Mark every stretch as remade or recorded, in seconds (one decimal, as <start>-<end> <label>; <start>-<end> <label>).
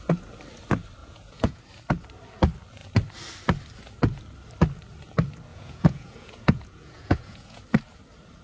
0.0-1.0 recorded; 1.0-1.6 remade; 1.6-5.5 recorded; 5.5-7.6 remade; 7.6-8.4 recorded